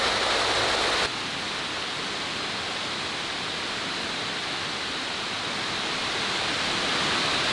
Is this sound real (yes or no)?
yes